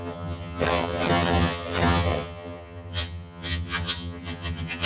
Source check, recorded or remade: remade